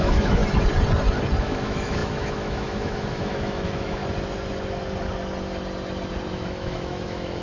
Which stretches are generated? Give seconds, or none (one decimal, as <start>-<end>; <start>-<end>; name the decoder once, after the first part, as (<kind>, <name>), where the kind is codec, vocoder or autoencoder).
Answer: 0.0-0.4 (autoencoder, DAC-VAE); 1.4-4.0; 6.3-7.4